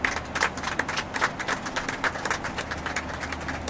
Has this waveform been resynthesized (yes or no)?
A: no